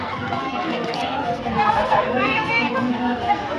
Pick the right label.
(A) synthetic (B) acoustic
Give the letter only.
A